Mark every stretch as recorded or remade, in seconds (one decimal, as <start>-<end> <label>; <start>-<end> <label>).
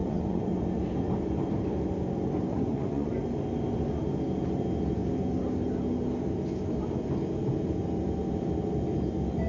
0.0-0.6 remade; 0.6-2.5 recorded; 2.5-3.1 remade; 3.1-9.5 recorded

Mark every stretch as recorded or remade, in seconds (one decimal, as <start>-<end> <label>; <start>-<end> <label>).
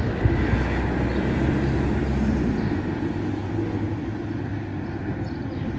0.0-5.8 recorded